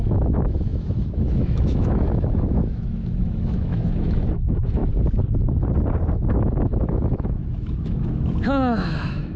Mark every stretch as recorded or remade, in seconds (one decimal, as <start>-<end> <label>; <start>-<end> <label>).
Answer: 0.0-4.8 remade; 4.8-6.3 recorded; 6.3-9.4 remade